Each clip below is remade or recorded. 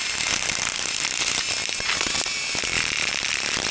recorded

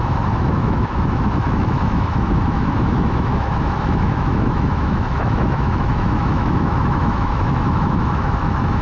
remade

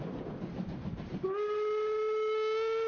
recorded